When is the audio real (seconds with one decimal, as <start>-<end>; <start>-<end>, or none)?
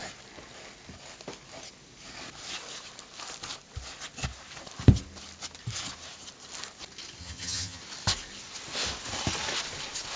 0.0-7.2; 7.8-10.2